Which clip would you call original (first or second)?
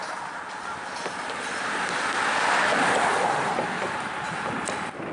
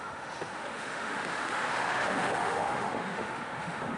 first